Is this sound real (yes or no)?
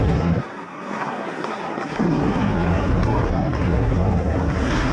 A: no